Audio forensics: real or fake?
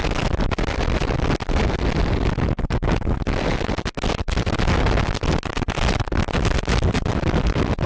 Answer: real